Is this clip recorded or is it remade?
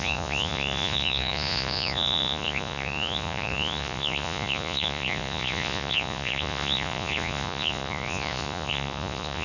remade